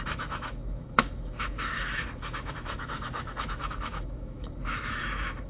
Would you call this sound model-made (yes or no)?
yes